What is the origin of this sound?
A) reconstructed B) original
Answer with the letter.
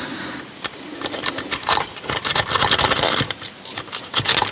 B